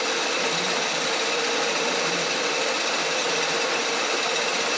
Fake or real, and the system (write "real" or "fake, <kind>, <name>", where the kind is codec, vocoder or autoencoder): real